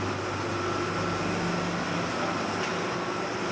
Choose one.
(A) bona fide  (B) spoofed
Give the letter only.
A